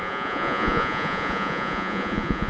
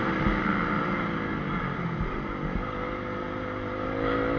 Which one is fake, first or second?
first